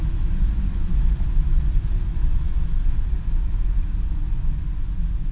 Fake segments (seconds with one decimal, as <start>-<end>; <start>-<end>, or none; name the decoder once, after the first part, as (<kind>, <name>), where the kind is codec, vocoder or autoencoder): none